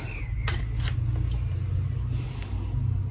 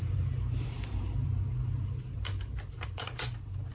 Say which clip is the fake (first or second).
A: second